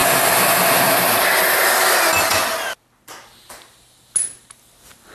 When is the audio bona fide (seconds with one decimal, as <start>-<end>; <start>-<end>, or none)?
0.0-5.1